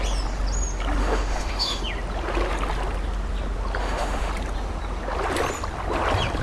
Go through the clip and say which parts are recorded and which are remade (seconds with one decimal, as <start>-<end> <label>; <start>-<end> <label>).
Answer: 0.0-1.0 recorded; 1.0-1.8 remade; 1.8-3.8 recorded; 3.8-4.3 remade; 4.3-6.4 recorded